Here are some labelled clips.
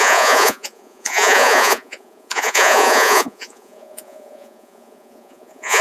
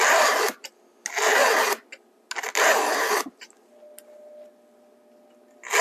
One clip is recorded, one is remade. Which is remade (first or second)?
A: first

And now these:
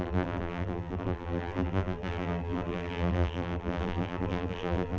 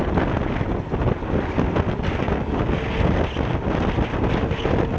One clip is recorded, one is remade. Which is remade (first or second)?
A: first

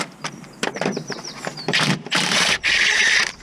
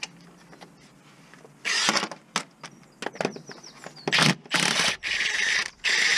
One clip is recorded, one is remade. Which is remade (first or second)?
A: first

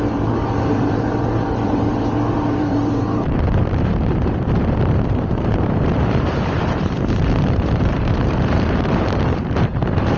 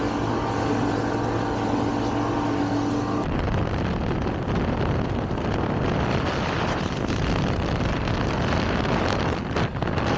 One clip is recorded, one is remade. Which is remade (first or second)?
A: first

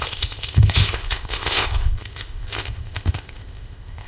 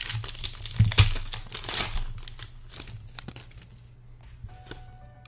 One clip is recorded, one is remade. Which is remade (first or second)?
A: first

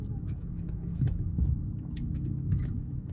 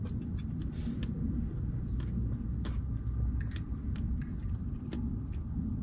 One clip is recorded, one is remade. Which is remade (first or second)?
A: first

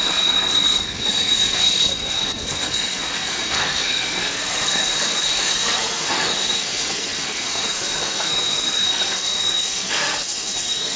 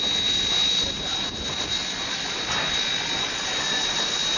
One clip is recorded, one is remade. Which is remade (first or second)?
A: first